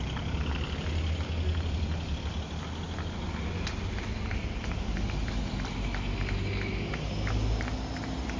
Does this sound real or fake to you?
real